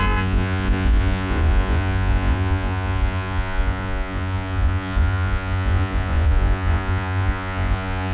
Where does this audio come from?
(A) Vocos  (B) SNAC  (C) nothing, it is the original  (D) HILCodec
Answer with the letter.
A